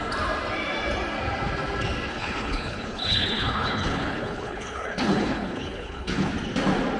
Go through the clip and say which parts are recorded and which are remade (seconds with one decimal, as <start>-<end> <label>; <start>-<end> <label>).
0.0-2.1 recorded; 2.1-6.3 remade; 6.3-7.0 recorded